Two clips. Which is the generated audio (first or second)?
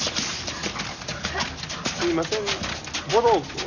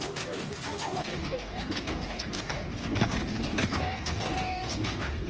second